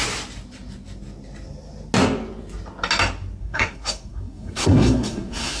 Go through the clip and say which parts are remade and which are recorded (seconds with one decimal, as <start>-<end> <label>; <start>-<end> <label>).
0.0-3.4 recorded; 3.4-5.6 remade